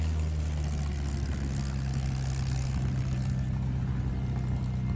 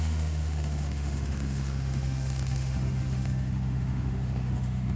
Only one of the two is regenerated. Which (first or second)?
second